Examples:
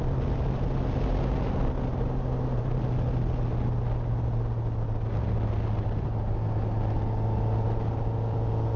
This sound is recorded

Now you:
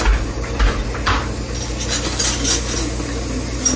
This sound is recorded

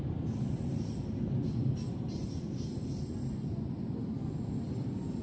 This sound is recorded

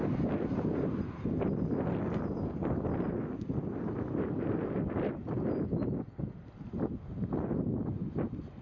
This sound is recorded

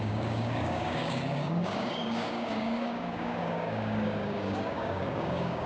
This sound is remade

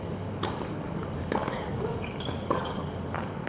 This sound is remade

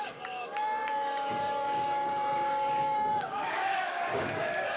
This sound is remade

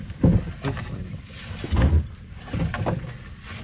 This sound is recorded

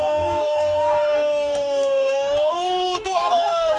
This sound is remade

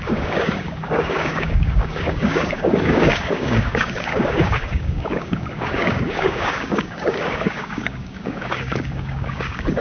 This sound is remade